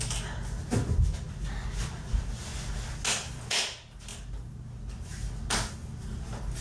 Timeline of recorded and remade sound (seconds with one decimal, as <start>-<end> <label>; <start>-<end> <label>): 0.0-6.6 recorded